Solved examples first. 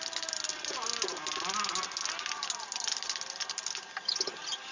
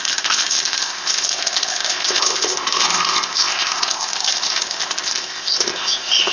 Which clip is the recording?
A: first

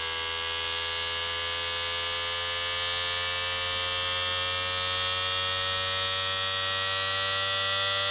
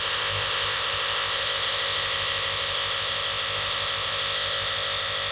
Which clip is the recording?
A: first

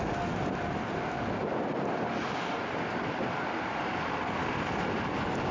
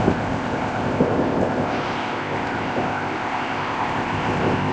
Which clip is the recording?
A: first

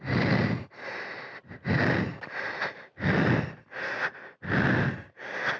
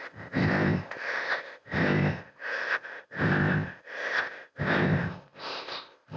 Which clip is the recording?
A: first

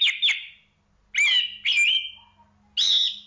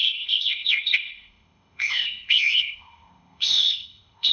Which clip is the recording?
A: first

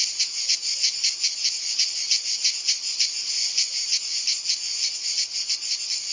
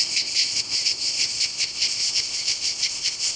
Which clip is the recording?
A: first